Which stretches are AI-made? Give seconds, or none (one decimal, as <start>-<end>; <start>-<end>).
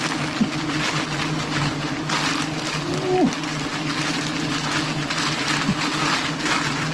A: none